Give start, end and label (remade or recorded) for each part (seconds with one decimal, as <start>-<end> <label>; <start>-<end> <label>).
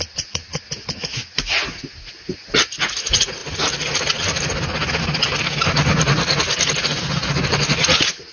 0.0-8.3 recorded